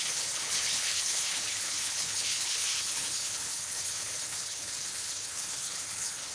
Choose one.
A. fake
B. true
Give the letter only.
A